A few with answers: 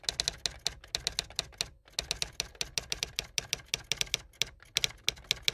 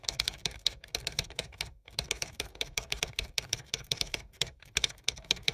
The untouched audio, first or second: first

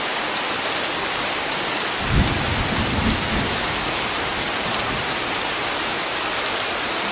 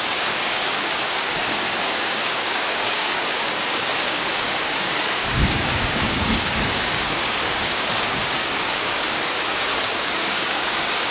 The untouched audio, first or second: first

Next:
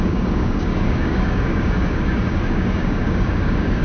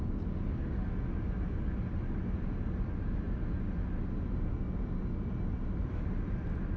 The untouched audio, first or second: second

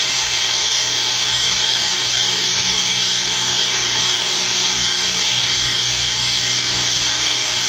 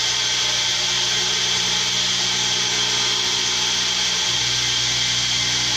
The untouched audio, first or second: second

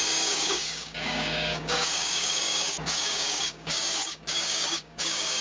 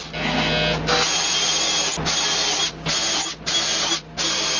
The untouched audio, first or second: second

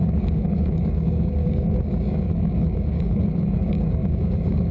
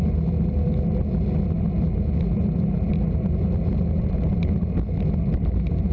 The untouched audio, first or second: second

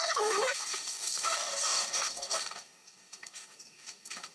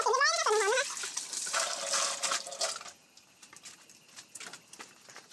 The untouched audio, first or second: second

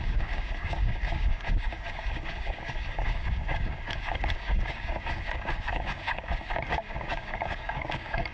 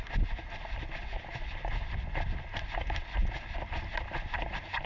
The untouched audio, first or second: second